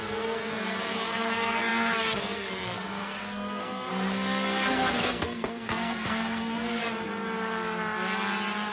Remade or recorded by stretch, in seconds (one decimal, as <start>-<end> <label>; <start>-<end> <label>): 0.0-6.8 remade; 6.8-8.7 recorded